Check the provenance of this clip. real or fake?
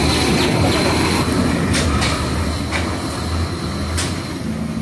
real